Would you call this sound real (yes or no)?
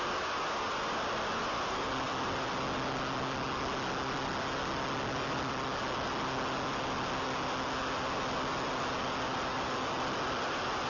yes